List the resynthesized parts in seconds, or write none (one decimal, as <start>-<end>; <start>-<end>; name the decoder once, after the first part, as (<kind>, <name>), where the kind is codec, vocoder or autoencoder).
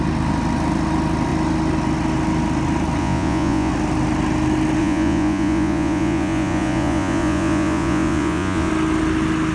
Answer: 3.0-3.7 (vocoder, Vocos); 4.8-8.7